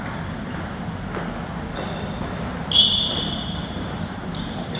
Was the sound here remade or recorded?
recorded